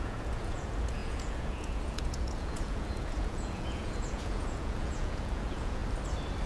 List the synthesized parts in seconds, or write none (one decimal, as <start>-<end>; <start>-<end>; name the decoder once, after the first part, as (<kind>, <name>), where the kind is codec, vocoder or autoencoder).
0.0-5.8 (vocoder, Vocos)